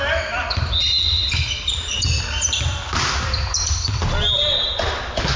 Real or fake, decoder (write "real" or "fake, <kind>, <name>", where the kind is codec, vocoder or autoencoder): real